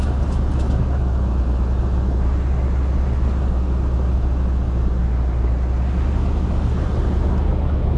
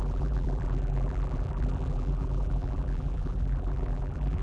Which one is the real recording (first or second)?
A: first